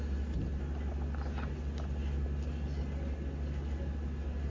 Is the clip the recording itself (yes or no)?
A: yes